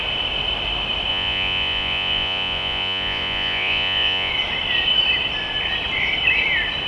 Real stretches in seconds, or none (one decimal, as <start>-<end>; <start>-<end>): 0.0-1.1; 4.3-6.9